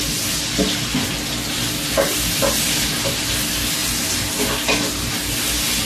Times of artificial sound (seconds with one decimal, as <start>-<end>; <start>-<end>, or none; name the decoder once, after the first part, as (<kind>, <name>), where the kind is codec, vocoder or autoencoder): none